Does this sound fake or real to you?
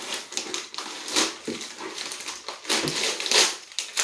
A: real